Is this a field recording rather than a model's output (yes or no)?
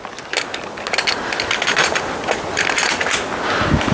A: yes